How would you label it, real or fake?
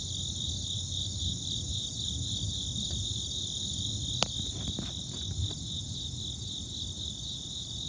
real